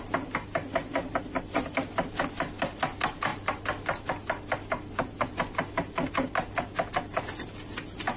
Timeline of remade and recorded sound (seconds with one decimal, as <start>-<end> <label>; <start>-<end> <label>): 0.0-8.2 recorded

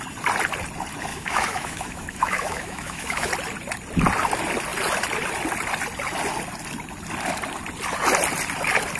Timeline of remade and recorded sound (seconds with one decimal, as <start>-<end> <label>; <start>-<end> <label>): 0.0-1.1 recorded; 1.1-3.3 remade; 3.3-9.0 recorded

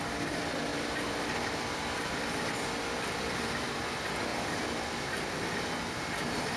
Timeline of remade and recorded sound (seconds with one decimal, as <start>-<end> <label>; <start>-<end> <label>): 0.0-6.6 recorded

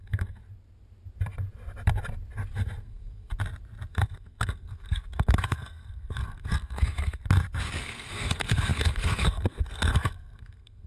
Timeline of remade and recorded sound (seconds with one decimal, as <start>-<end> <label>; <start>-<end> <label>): 0.0-0.4 remade; 0.4-2.8 recorded; 2.8-3.3 remade; 3.3-3.9 recorded; 3.9-7.2 remade; 7.2-7.8 recorded; 7.8-10.9 remade

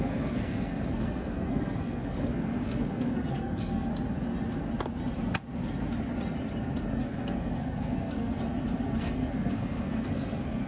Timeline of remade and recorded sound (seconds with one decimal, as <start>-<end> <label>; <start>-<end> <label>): 0.0-3.9 remade; 3.9-6.9 recorded; 6.9-8.4 remade; 8.4-9.0 recorded; 9.0-10.7 remade

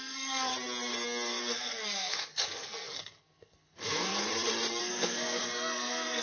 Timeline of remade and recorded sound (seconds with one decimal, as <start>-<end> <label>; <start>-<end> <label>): 0.0-0.5 remade; 0.5-1.4 recorded; 1.4-4.1 remade; 4.1-4.8 recorded; 4.8-6.2 remade

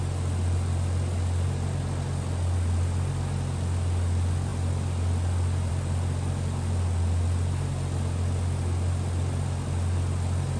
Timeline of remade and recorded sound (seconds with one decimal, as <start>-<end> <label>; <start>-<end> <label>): 0.0-10.6 recorded

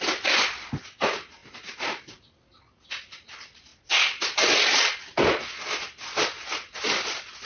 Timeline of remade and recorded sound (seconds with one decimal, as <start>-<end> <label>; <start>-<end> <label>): 0.0-7.5 recorded